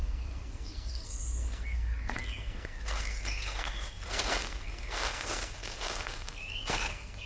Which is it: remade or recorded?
remade